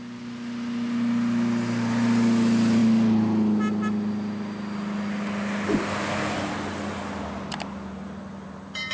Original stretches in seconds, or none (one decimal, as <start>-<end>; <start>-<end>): 0.0-8.9